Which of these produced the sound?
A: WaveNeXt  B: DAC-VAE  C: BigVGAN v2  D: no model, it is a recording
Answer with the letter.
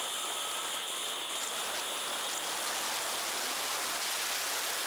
D